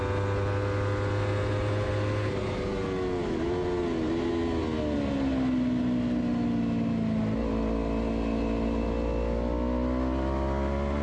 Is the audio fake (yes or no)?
no